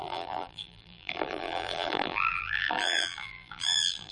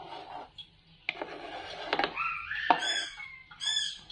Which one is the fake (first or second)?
first